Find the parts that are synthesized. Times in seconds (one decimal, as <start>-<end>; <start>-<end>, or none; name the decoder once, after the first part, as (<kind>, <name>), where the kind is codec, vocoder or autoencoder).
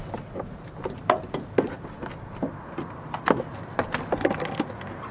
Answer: none